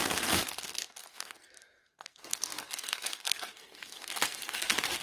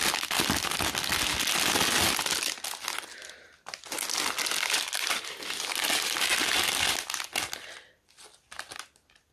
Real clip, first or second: second